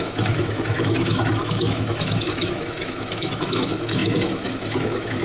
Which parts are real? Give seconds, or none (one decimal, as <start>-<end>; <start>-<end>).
none